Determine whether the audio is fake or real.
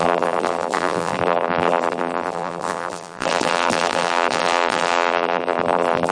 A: fake